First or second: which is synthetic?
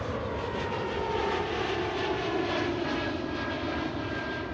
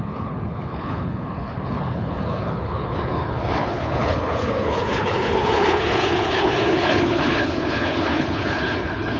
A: second